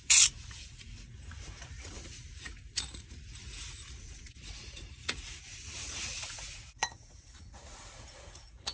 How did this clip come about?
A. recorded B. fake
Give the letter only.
B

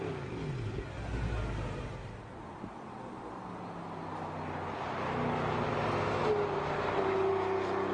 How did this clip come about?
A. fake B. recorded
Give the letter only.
B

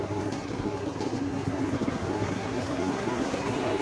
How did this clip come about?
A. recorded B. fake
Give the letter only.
B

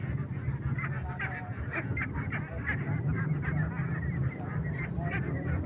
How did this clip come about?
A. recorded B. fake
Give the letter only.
A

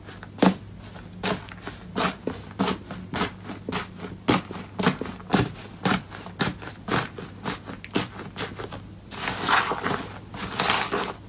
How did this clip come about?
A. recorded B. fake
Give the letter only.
A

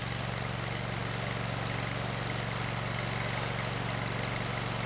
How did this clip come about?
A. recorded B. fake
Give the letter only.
A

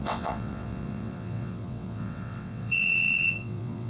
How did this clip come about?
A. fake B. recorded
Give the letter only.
A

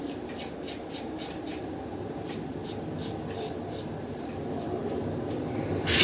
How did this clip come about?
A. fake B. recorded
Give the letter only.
B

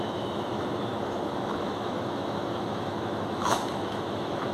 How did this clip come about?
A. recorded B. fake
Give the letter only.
B